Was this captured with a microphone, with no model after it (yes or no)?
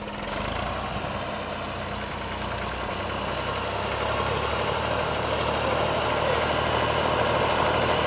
yes